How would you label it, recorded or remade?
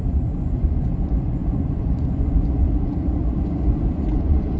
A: remade